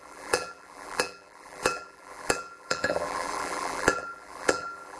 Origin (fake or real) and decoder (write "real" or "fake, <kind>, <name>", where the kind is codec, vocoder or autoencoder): fake, vocoder, BigVGAN v2